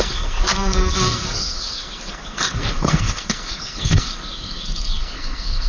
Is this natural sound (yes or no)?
no